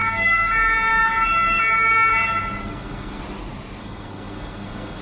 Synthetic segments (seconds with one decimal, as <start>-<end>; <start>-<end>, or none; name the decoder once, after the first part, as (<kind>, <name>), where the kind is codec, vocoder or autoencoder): 0.0-0.5 (codec, SNAC); 2.6-3.2; 3.8-5.0